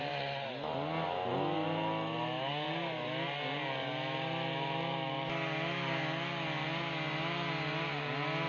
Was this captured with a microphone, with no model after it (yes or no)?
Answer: yes